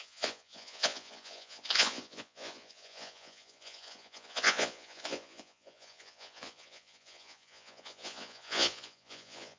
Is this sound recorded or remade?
remade